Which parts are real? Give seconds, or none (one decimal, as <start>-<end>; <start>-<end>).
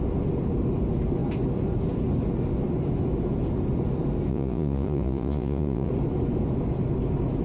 0.0-4.3; 5.9-7.4